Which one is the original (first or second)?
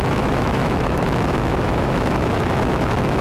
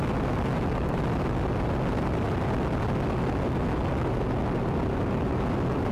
second